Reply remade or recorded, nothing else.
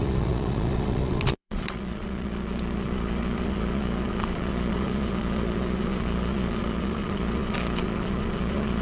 remade